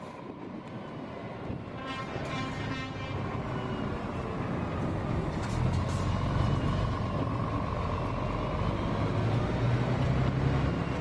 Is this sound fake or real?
real